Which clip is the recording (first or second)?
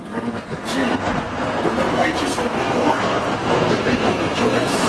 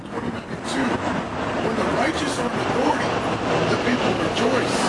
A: second